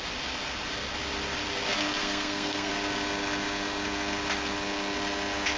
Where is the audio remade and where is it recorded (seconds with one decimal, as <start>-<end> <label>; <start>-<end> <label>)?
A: 0.0-2.0 recorded; 2.0-2.7 remade; 2.7-5.6 recorded